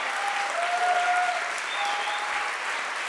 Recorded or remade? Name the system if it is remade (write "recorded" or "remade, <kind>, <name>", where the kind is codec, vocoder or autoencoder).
recorded